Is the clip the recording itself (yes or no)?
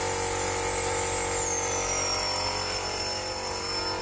yes